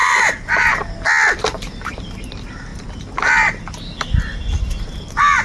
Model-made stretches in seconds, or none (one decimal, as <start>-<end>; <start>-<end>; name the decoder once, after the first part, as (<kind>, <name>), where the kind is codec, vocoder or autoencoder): 0.0-0.8 (vocoder, BigVGAN v2)